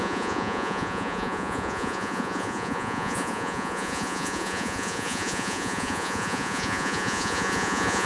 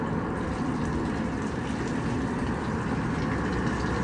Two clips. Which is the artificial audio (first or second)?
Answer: first